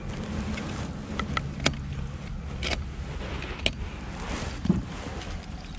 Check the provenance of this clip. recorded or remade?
recorded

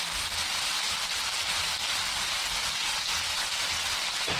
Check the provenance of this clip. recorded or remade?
recorded